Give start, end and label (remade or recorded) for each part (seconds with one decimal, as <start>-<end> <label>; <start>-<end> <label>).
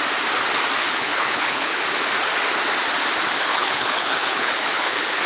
0.0-0.8 recorded; 0.8-1.8 remade; 1.8-3.5 recorded; 3.5-5.3 remade